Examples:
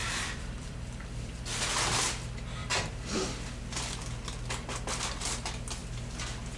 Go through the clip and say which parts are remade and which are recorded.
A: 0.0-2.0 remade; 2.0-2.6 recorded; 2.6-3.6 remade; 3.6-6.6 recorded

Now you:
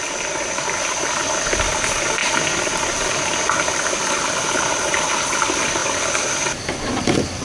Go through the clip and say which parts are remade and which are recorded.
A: 0.0-7.4 recorded

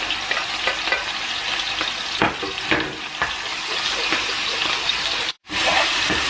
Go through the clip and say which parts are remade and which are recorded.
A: 0.0-3.5 recorded; 3.5-6.3 remade